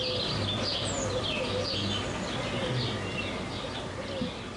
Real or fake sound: real